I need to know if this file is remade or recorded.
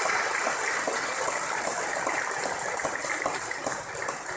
recorded